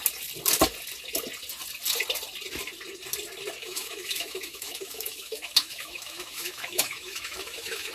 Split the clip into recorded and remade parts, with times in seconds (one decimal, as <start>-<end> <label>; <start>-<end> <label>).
0.0-3.6 recorded; 3.6-7.9 remade